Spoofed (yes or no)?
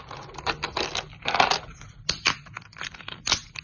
no